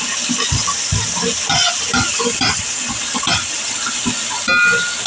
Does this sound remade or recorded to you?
recorded